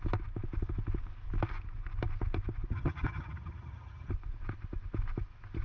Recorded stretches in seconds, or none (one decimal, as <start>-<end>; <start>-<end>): 0.0-2.7; 4.1-5.6